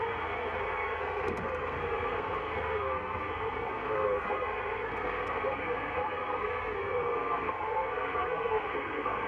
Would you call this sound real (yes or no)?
no